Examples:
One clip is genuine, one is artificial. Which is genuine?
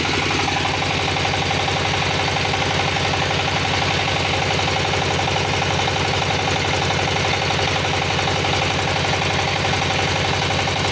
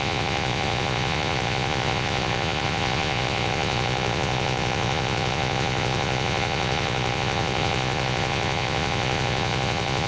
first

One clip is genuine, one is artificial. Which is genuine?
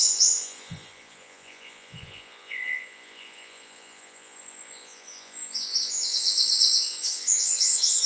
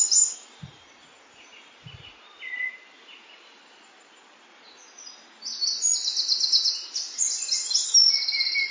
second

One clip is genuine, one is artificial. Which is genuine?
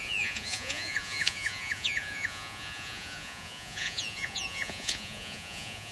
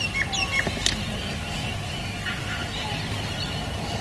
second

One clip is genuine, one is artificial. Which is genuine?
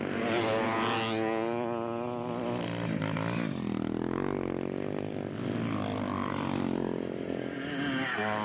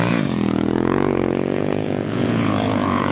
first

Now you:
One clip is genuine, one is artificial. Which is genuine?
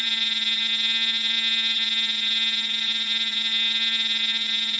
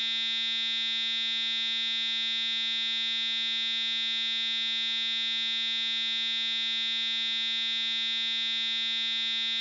second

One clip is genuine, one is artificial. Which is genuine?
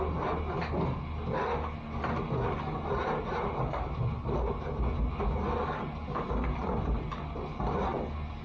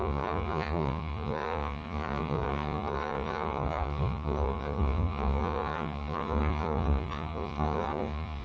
first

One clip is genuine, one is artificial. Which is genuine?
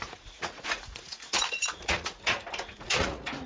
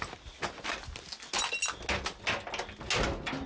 second